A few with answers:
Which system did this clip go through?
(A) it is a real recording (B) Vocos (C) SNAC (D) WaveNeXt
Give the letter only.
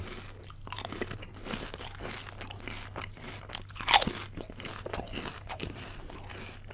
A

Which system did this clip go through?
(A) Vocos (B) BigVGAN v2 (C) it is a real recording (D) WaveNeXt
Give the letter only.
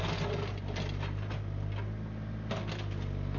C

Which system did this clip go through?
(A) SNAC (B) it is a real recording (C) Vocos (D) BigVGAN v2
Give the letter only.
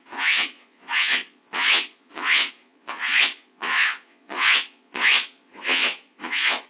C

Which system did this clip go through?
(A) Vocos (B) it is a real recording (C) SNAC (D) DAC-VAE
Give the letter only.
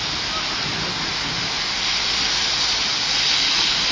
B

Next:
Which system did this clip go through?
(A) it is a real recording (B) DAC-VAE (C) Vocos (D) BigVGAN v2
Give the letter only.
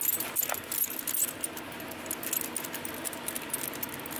A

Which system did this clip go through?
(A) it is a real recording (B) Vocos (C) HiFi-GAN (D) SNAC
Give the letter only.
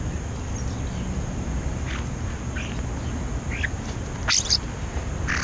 A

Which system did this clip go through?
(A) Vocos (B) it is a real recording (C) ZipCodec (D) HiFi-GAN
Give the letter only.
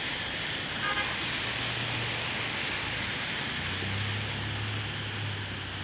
B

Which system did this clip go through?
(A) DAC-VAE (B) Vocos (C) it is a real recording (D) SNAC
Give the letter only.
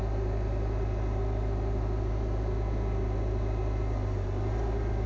C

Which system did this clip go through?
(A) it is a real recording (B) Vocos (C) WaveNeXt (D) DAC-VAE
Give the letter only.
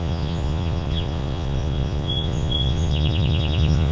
B